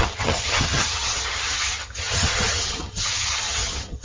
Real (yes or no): no